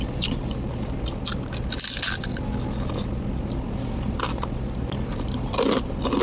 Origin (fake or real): real